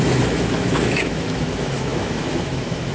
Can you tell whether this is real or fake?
fake